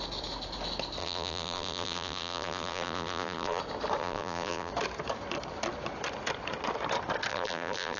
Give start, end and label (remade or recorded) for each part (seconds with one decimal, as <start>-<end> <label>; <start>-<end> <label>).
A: 0.0-1.0 recorded; 1.0-3.6 remade; 3.6-4.0 recorded; 4.0-4.7 remade; 4.7-7.3 recorded; 7.3-8.0 remade